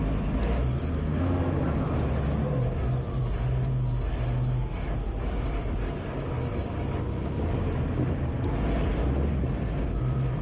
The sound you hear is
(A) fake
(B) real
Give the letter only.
B